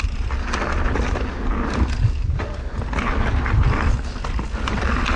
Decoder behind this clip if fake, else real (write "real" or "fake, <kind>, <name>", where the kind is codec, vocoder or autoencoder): real